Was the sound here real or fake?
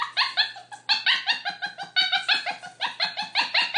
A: real